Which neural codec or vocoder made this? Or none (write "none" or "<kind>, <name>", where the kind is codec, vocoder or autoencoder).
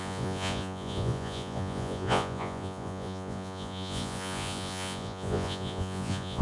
vocoder, Vocos